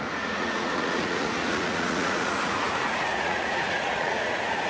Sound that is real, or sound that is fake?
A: fake